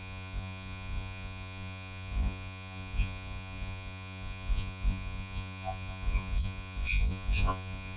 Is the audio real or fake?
fake